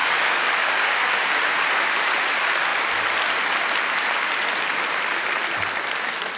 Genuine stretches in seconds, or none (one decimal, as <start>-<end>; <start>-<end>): 1.4-6.4